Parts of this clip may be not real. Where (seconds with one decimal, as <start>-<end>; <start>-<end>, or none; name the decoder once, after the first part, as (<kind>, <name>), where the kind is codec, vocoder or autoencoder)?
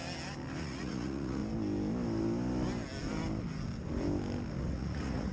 0.6-1.4 (vocoder, Vocos); 4.6-5.3